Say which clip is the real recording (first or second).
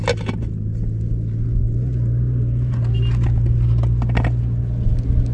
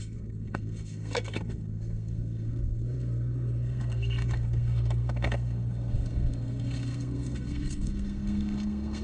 first